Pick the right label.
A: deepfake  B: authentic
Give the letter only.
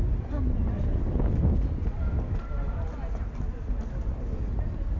B